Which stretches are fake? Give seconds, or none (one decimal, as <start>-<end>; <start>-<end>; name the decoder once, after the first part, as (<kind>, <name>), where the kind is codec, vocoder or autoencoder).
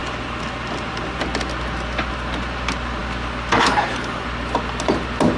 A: none